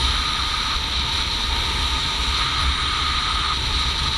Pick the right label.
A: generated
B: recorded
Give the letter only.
B